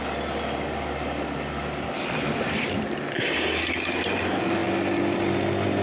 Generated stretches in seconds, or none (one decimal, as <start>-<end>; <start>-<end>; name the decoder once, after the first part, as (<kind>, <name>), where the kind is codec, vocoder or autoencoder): none